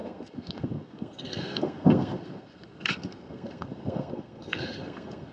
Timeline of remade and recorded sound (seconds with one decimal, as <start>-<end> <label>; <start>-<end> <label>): 0.0-5.3 remade